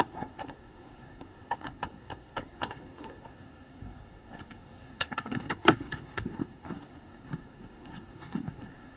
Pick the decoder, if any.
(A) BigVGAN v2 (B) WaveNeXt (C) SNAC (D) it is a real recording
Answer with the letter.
C